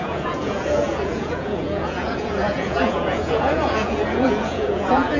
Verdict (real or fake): fake